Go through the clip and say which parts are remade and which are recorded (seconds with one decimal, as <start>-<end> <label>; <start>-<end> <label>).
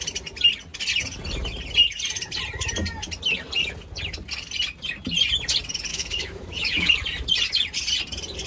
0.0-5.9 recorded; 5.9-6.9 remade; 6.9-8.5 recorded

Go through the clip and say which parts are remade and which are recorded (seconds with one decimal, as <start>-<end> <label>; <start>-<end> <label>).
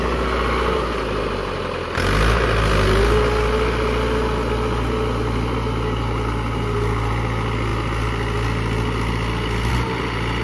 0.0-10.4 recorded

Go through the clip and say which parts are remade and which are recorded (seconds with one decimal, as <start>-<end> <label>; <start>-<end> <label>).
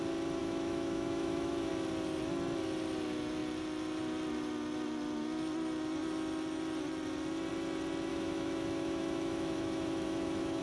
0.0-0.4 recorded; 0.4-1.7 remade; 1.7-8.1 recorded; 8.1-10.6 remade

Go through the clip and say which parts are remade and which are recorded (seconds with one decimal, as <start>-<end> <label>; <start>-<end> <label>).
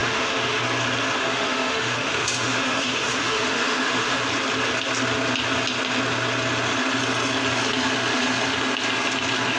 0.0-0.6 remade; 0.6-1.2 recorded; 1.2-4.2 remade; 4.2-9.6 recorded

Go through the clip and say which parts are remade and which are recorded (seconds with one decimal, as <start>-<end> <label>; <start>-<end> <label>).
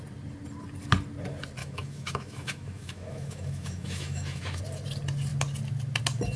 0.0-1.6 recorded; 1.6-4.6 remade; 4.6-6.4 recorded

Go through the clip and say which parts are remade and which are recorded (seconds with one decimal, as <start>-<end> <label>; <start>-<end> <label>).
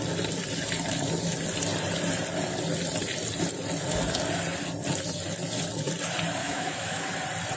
0.0-6.4 recorded; 6.4-7.1 remade; 7.1-7.6 recorded